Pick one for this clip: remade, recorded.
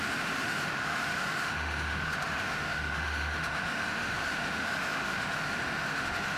remade